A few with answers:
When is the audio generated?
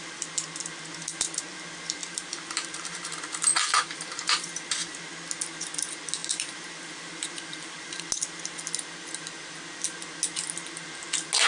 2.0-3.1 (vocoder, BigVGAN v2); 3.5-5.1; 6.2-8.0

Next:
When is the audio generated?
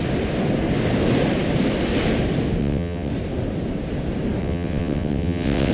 2.6-3.1 (vocoder, WaveNeXt); 4.4-5.7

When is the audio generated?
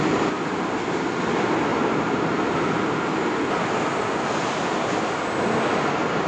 1.7-2.3 (vocoder, BigVGAN v2)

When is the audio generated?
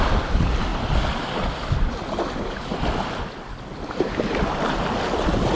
none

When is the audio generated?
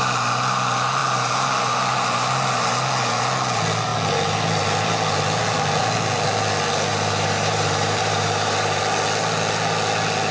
6.9-8.8 (vocoder, BigVGAN v2)